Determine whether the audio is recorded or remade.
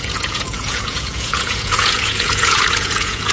remade